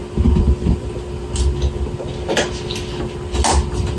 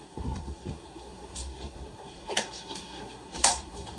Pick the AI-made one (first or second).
second